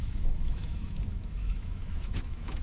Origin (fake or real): fake